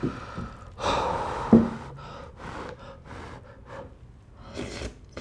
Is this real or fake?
real